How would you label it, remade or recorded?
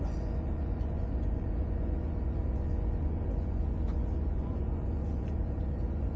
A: remade